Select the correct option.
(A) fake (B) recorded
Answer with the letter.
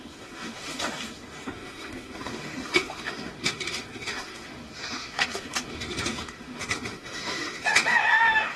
A